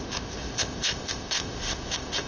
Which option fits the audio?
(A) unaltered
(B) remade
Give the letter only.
B